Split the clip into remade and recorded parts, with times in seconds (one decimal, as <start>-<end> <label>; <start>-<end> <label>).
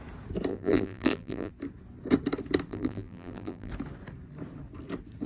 0.0-0.5 recorded; 0.5-1.5 remade; 1.5-2.7 recorded; 2.7-3.7 remade; 3.7-5.3 recorded